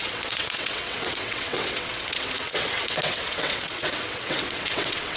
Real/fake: fake